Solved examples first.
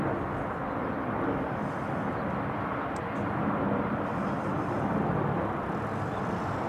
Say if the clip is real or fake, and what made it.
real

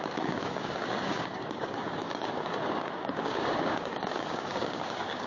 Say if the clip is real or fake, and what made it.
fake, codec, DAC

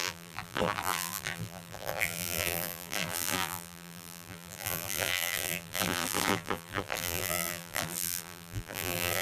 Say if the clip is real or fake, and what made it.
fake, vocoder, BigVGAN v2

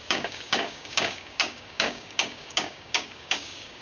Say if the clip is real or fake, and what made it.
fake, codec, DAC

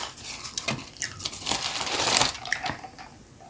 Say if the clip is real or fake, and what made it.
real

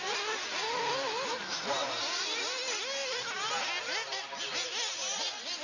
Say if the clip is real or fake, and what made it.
real